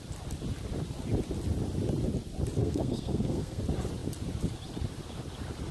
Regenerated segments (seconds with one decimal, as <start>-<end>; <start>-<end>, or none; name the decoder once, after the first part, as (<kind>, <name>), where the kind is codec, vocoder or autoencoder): 2.6-3.6 (codec, SNAC)